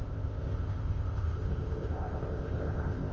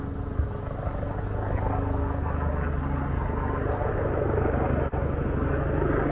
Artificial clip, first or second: first